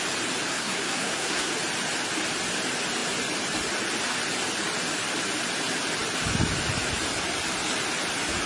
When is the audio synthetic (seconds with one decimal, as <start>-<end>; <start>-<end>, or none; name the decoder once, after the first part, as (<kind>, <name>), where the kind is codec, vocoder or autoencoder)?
0.5-1.5 (codec, SNAC)